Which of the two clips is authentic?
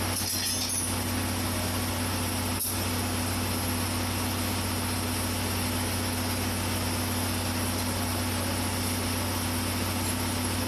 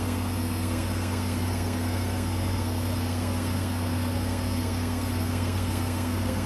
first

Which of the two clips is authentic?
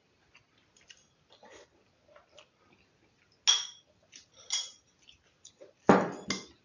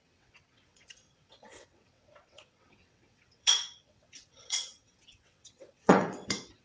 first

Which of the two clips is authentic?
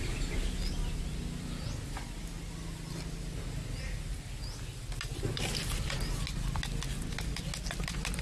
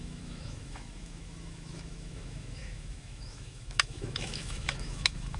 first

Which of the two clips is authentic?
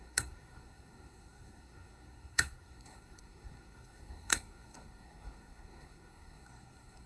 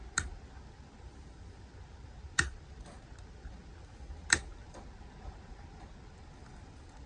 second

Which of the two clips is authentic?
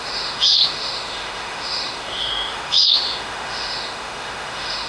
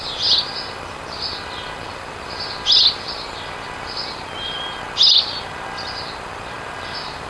second